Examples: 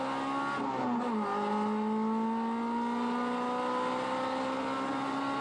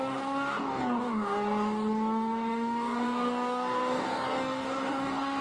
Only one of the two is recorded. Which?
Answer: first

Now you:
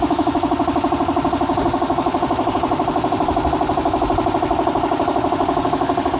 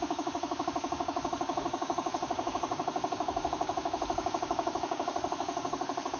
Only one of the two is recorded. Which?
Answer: first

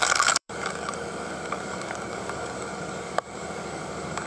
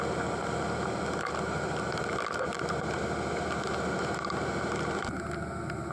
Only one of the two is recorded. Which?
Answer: second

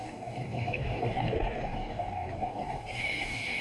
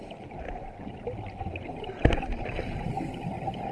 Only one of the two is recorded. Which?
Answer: second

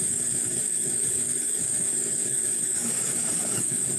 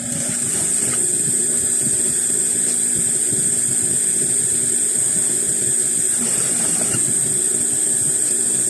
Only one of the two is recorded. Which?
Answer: second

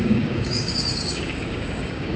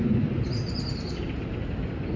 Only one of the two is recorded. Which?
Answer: second